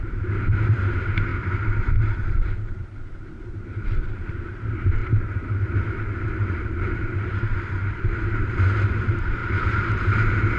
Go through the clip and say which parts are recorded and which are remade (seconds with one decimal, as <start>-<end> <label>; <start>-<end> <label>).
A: 0.0-10.6 remade